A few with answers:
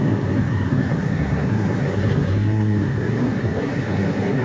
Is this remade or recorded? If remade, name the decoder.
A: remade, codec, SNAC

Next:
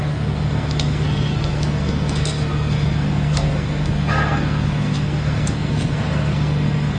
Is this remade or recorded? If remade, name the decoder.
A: remade, codec, SNAC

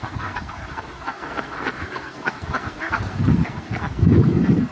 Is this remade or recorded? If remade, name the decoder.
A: remade, codec, SNAC